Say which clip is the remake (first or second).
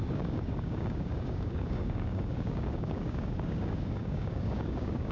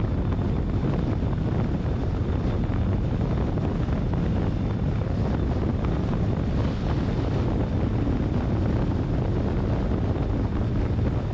first